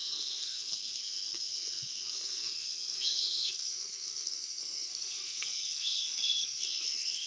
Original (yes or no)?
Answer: no